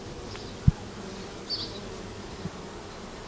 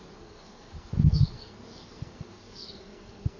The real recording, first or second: first